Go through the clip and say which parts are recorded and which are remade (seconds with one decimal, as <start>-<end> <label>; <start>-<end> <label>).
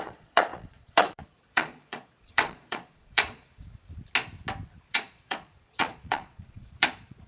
0.0-3.8 remade; 3.8-4.9 recorded; 4.9-7.3 remade